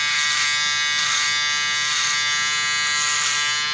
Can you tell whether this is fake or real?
real